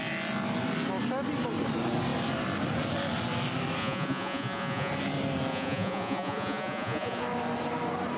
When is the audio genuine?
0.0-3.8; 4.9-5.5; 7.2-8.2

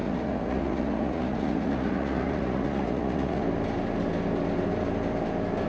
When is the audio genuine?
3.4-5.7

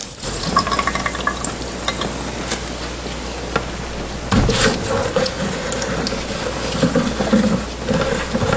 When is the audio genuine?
0.7-5.0; 5.7-8.6